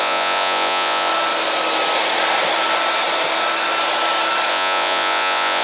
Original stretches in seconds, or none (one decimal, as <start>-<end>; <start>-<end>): 1.1-4.5

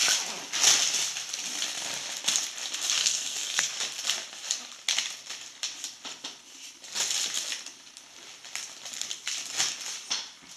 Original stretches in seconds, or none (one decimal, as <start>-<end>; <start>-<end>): 0.0-3.0; 3.7-10.6

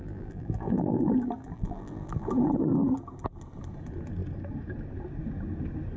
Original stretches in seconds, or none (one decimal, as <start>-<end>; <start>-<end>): 2.3-6.0

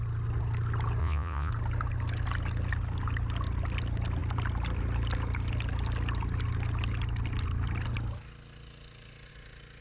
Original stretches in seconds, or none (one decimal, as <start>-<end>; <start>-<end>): 0.0-1.0; 1.5-9.8

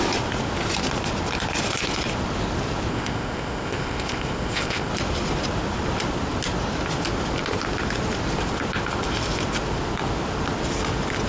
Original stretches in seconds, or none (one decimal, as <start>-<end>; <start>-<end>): 0.0-2.9; 4.9-11.3